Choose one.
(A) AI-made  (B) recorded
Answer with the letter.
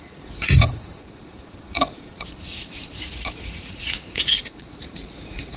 A